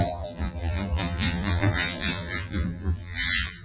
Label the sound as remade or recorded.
remade